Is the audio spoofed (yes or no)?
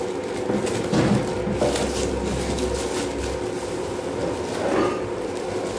no